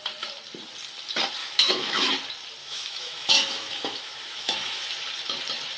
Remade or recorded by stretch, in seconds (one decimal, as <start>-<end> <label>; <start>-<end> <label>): 0.0-1.4 recorded; 1.4-2.1 remade; 2.1-2.6 recorded; 2.6-4.9 remade; 4.9-5.8 recorded